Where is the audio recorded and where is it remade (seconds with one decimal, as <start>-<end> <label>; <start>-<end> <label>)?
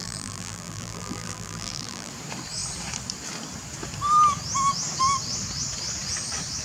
0.0-2.1 remade; 2.1-6.6 recorded